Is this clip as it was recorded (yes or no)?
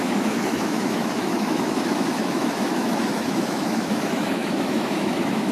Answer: no